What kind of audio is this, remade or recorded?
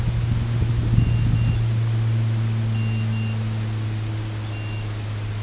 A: recorded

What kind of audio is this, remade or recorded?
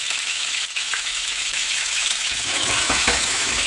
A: remade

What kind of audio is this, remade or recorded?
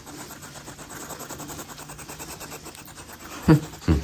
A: recorded